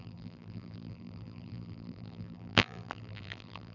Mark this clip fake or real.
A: fake